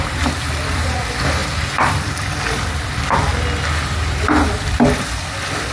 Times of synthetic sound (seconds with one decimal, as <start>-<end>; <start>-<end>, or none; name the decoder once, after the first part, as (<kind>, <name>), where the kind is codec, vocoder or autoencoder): 0.0-1.4 (vocoder, BigVGAN v2); 2.8-3.3; 4.5-5.7